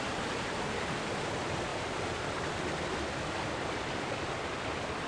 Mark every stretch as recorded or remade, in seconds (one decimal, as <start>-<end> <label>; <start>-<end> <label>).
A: 0.0-5.1 recorded